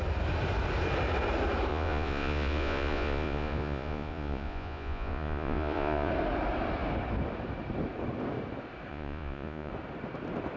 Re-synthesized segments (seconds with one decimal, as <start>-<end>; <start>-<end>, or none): 1.7-6.1; 8.9-9.7